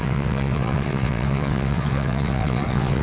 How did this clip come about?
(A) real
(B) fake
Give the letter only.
B